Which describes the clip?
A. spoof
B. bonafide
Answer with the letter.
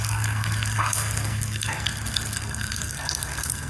A